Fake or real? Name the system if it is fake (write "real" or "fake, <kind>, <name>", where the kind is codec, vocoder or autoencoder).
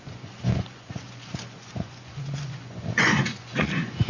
fake, vocoder, Vocos